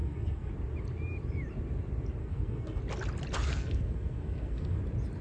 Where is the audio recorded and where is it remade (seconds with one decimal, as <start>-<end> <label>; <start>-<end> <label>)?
0.0-0.5 remade; 0.5-2.2 recorded; 2.2-2.8 remade; 2.8-3.5 recorded; 3.5-4.8 remade; 4.8-5.2 recorded